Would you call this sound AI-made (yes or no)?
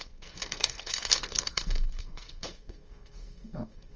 yes